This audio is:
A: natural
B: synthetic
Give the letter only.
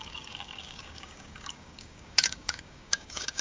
B